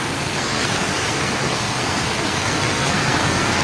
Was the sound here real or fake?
fake